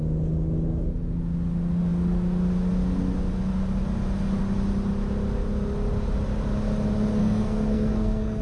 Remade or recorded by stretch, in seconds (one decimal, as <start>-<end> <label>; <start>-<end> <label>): 0.0-7.2 recorded; 7.2-8.4 remade